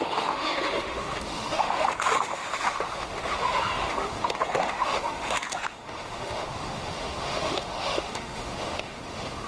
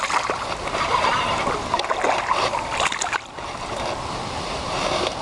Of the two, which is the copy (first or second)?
first